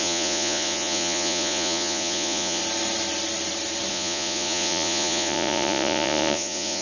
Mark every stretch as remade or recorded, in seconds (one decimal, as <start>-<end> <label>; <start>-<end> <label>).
0.0-2.6 remade; 2.6-3.9 recorded; 3.9-6.8 remade